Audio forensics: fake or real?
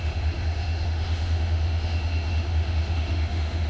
fake